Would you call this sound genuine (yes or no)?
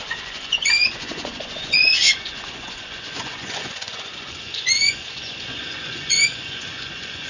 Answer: no